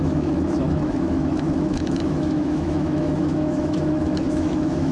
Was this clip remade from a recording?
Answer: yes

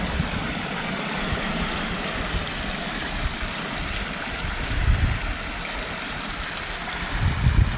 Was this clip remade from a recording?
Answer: no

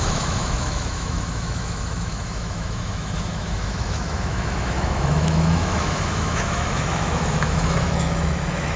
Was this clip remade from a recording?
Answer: yes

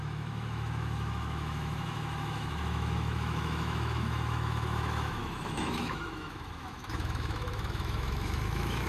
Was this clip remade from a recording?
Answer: yes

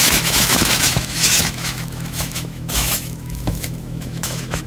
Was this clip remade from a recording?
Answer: yes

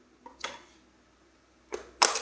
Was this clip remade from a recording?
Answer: no